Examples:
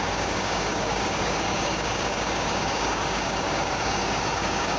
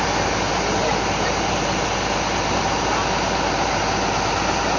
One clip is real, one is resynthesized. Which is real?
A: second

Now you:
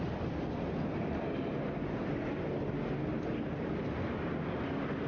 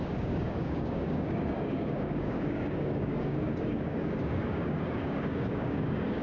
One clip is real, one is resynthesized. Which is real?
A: first